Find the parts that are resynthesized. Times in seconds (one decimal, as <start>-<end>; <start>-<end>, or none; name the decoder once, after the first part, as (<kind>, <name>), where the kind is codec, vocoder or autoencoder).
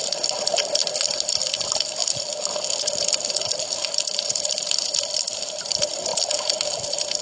0.0-2.0 (vocoder, BigVGAN v2); 4.5-6.1; 6.8-7.2